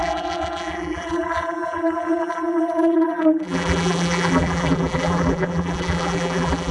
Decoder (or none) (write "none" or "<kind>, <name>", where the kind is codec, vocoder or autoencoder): vocoder, BigVGAN v2